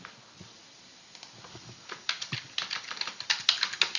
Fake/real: real